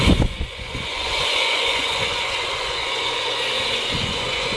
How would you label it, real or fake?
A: fake